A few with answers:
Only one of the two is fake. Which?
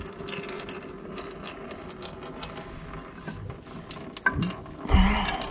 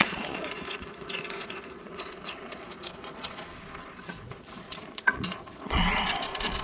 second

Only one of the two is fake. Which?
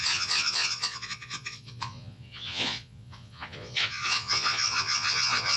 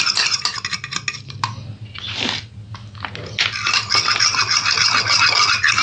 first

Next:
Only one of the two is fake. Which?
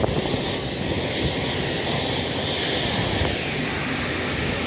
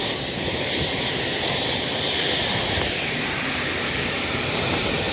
second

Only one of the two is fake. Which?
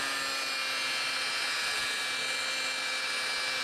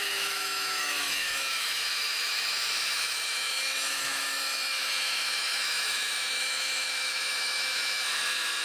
second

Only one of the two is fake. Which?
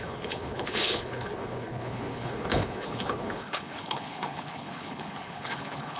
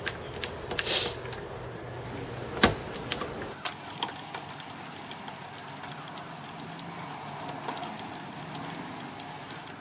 first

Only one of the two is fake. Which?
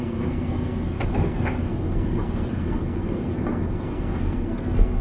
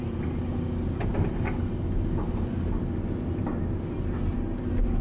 first